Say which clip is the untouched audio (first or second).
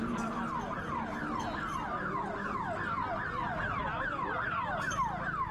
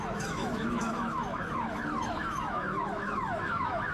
first